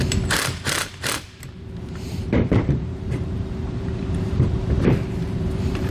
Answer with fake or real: fake